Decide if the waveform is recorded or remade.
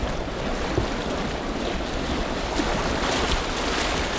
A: recorded